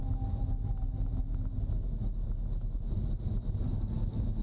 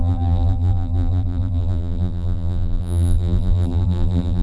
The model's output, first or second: second